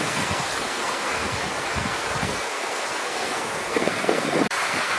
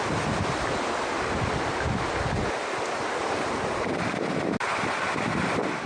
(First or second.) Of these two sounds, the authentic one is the second